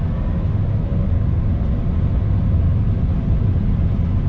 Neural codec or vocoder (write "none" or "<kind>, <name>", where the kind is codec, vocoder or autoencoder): none